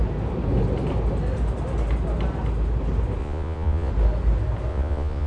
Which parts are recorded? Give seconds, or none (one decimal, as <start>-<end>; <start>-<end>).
0.0-3.2; 3.9-4.7